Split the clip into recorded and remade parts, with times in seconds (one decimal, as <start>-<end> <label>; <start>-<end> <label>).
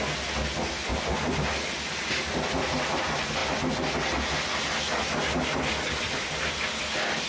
0.0-7.3 recorded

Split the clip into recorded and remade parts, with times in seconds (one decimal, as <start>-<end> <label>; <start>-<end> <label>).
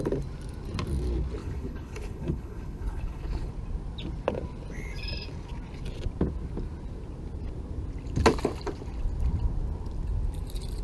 0.0-1.4 recorded; 1.4-3.5 remade; 3.5-10.8 recorded